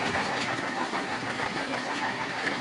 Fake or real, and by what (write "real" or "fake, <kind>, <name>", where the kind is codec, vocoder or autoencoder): fake, codec, SNAC